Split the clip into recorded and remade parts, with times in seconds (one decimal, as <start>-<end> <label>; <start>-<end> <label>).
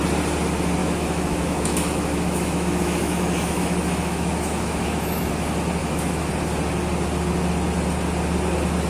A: 0.0-0.8 recorded; 0.8-5.3 remade; 5.3-5.8 recorded; 5.8-6.3 remade; 6.3-8.9 recorded